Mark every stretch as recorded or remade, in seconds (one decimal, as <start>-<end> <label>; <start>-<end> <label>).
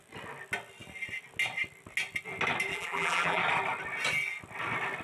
0.0-2.7 recorded; 2.7-3.4 remade; 3.4-5.0 recorded